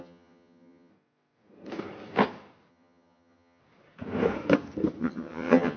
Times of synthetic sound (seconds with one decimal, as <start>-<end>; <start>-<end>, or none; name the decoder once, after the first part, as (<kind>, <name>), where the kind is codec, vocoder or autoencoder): 0.0-0.9 (vocoder, HiFi-GAN); 2.7-3.6; 5.0-5.8